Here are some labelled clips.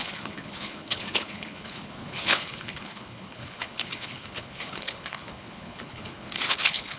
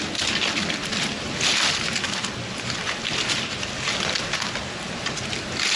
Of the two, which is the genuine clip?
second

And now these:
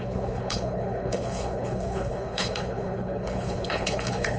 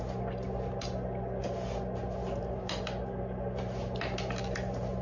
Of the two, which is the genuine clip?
second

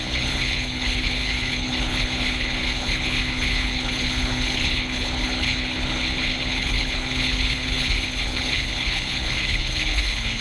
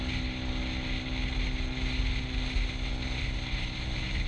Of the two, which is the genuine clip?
second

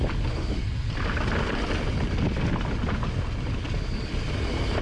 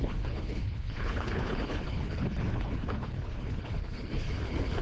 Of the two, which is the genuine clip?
first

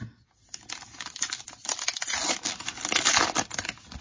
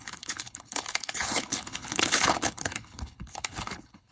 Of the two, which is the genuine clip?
first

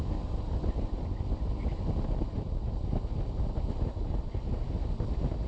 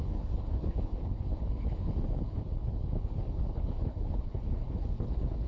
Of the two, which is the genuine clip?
first